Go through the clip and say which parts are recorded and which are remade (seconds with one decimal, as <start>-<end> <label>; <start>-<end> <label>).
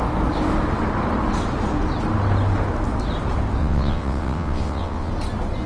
0.0-3.6 recorded; 3.6-5.1 remade; 5.1-5.7 recorded